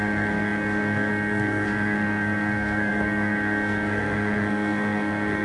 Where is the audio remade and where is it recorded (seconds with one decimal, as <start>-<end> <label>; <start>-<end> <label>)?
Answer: 0.0-5.4 remade